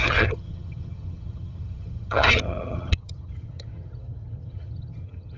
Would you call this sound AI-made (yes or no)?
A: yes